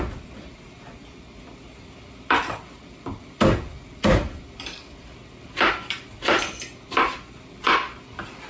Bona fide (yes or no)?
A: yes